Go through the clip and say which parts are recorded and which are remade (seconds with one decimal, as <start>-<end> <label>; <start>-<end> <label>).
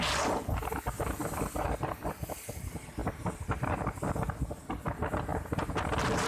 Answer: 0.0-6.3 recorded